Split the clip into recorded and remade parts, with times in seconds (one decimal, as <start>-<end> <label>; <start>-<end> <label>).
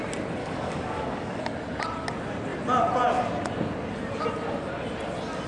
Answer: 0.0-0.4 recorded; 0.4-1.4 remade; 1.4-5.5 recorded